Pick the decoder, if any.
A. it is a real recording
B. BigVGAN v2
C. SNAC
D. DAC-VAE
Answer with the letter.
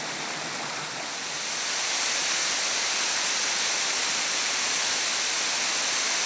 A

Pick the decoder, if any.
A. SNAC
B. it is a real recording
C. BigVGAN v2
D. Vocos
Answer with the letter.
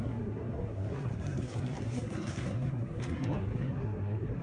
A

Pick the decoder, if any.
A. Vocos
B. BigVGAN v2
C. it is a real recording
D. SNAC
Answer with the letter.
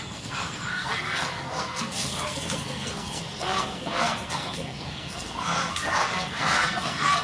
D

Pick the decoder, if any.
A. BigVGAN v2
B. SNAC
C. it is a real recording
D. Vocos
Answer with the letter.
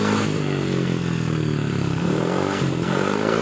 B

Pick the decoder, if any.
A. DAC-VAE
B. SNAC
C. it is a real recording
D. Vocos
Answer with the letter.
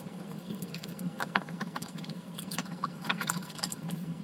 B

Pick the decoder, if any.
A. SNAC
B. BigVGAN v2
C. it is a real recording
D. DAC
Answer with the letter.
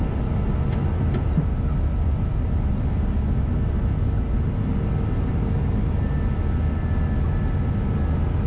C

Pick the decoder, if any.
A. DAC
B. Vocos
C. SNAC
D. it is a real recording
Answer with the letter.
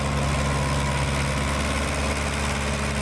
D